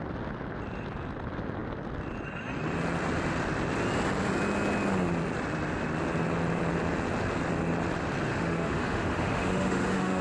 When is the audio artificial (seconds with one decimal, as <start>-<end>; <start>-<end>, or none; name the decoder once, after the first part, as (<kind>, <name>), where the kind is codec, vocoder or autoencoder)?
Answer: 8.3-10.2 (autoencoder, DAC-VAE)